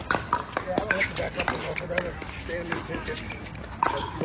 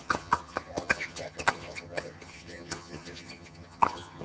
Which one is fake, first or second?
second